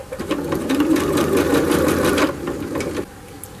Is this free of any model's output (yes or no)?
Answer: yes